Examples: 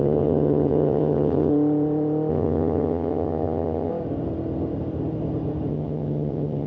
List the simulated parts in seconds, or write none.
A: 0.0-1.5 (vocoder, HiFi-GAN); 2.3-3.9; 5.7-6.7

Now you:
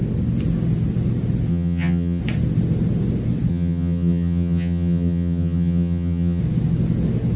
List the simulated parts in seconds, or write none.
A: 1.5-2.2 (vocoder, HiFi-GAN); 3.5-6.4

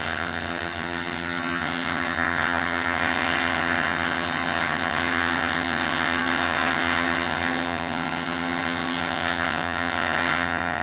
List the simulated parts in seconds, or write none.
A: 0.0-10.8 (vocoder, HiFi-GAN)

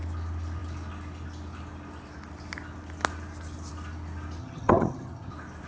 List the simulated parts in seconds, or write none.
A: 4.4-5.3 (vocoder, HiFi-GAN)